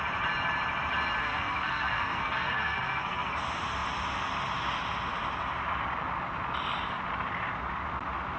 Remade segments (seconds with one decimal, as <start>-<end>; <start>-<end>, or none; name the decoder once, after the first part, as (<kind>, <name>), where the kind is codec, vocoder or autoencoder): 1.2-3.3 (codec, SNAC)